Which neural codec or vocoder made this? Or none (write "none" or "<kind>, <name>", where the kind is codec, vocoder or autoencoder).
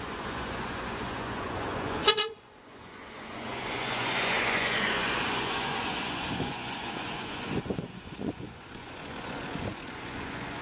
vocoder, Vocos